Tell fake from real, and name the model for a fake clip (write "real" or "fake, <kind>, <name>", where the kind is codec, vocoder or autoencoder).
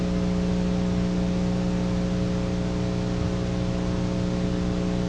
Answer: real